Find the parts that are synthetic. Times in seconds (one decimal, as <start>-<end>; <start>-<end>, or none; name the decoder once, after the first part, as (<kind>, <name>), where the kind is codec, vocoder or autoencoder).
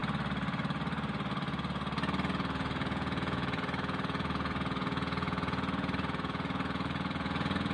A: 2.3-7.7 (vocoder, Vocos)